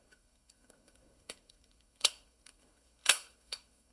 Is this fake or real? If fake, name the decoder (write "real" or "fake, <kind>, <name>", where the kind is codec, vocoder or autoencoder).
fake, codec, SNAC